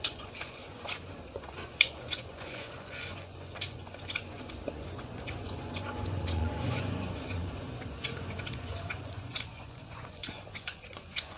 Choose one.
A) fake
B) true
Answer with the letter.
A